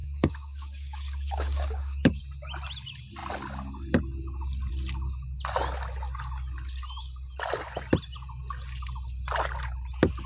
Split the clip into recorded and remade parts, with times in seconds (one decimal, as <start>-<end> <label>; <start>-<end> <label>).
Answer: 0.0-2.2 remade; 2.2-10.3 recorded